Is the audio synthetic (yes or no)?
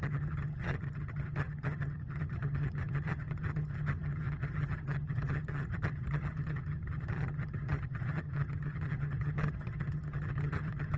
yes